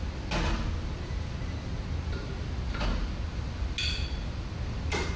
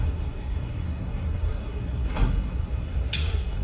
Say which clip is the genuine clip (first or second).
first